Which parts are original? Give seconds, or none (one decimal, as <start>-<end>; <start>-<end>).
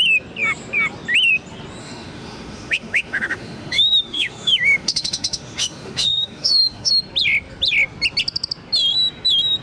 0.0-1.8; 6.9-9.6